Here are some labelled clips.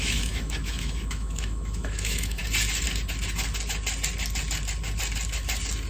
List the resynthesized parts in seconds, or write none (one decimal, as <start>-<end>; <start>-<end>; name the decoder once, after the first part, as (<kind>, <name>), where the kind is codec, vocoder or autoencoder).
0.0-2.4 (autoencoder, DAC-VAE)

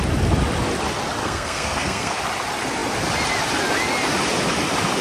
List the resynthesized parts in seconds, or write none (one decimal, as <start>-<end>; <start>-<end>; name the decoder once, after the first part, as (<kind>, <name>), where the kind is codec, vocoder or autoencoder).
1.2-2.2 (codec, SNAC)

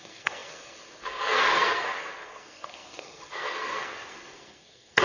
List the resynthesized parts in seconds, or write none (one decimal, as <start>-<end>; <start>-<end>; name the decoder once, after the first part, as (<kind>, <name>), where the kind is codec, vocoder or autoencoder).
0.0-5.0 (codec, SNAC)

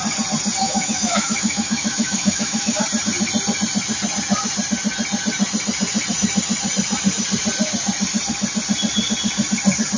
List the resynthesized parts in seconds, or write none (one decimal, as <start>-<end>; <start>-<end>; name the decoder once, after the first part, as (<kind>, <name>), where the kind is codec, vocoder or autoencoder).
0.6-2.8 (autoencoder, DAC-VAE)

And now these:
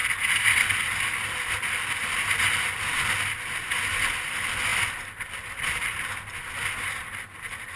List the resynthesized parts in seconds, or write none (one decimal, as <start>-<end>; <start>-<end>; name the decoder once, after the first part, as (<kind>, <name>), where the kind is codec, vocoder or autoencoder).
none

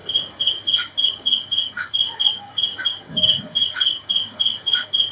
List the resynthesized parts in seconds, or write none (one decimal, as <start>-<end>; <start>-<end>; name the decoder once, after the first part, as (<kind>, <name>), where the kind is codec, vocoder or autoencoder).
0.0-5.1 (codec, DAC)

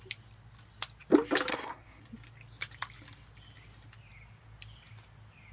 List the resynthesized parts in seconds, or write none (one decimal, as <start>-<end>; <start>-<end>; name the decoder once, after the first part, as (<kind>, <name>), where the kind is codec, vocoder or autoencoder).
1.5-2.0 (codec, SNAC)

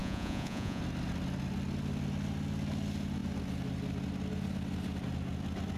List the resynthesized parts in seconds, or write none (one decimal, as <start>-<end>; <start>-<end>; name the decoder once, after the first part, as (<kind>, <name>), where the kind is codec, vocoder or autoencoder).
0.0-0.8 (vocoder, Vocos)